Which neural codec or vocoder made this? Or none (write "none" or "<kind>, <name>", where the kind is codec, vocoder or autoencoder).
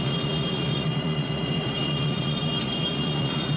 vocoder, Vocos